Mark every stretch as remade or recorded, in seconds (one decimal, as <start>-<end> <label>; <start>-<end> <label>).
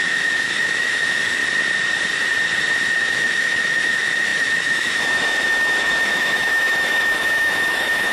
0.0-1.4 remade; 1.4-2.9 recorded; 2.9-8.1 remade